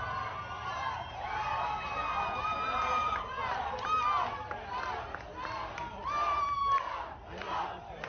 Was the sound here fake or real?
real